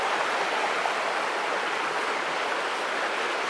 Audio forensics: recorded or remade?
recorded